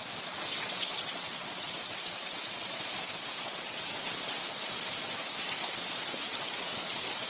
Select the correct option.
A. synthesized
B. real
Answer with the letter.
A